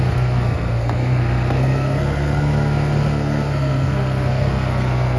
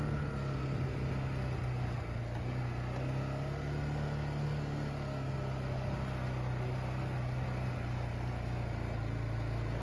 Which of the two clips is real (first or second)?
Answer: second